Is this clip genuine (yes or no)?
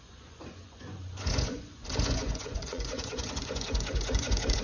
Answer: no